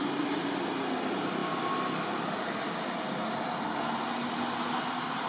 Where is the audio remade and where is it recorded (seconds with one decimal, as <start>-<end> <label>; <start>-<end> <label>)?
0.0-5.3 recorded